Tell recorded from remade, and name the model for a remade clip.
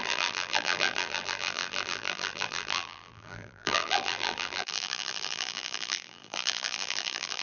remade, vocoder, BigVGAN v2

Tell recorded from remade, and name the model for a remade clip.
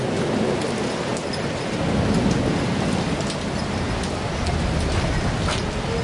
recorded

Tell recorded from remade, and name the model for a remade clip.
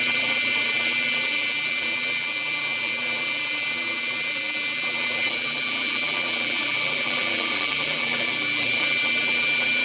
remade, vocoder, BigVGAN v2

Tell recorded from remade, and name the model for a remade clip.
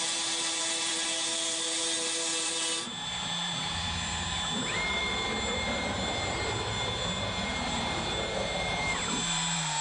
remade, vocoder, BigVGAN v2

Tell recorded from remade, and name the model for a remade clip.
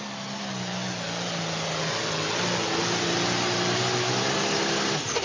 recorded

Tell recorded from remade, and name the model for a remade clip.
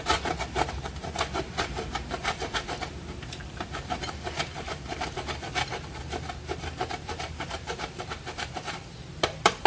remade, vocoder, BigVGAN v2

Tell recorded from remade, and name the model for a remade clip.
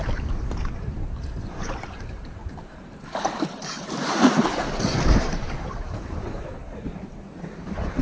remade, vocoder, BigVGAN v2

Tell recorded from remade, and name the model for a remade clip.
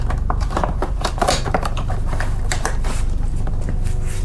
remade, vocoder, BigVGAN v2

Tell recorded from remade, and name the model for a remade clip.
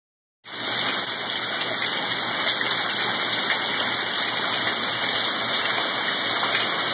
recorded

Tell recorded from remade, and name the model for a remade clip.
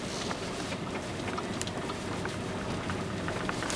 recorded